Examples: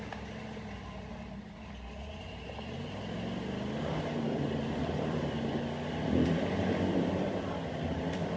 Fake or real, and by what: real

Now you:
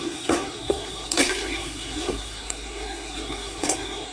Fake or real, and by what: fake, codec, SNAC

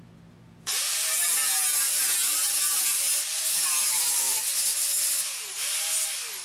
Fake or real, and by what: real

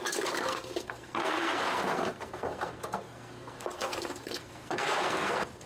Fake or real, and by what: fake, codec, SNAC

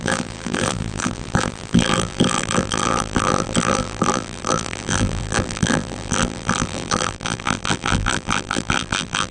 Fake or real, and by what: fake, vocoder, BigVGAN v2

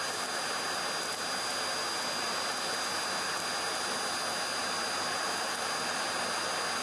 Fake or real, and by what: real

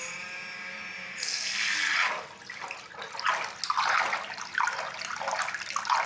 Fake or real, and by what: real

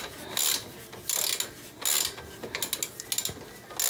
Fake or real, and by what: real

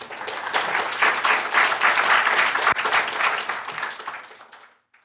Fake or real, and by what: real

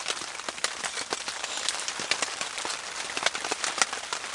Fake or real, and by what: real